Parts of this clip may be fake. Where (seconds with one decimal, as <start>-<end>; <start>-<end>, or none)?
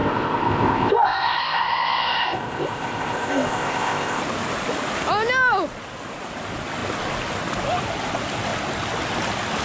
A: 0.0-4.2